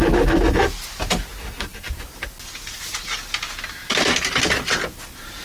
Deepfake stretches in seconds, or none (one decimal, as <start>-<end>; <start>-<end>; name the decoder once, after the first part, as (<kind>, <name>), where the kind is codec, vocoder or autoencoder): none